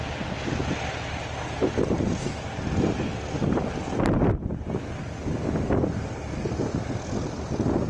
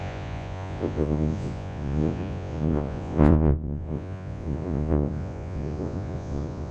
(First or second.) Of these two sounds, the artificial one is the second